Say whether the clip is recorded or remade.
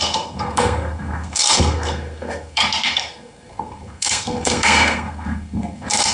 remade